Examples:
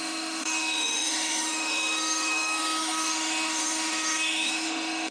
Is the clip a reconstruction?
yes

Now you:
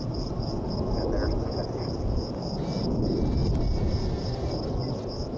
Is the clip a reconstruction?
no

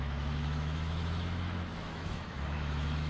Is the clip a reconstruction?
yes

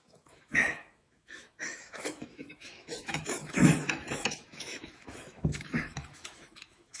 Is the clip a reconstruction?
yes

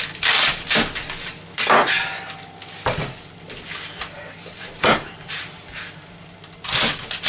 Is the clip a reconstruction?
no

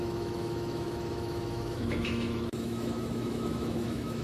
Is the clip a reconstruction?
yes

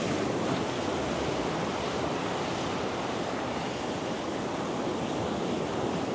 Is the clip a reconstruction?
no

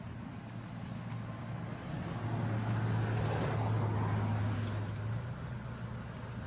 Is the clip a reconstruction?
no